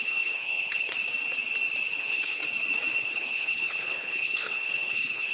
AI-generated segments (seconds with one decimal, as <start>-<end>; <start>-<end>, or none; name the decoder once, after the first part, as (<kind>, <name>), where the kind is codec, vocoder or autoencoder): 0.0-0.9 (codec, HILCodec); 2.0-2.4; 3.0-5.3